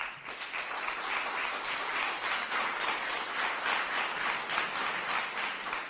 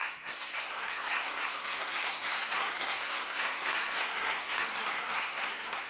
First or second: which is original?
first